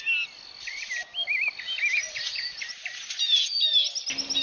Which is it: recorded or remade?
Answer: recorded